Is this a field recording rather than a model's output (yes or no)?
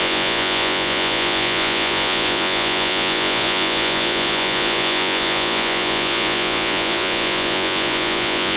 no